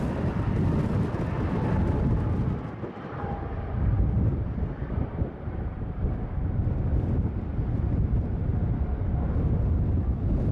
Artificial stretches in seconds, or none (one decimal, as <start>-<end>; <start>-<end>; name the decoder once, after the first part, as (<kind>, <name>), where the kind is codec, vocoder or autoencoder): 3.9-6.0 (vocoder, BigVGAN v2); 8.5-9.0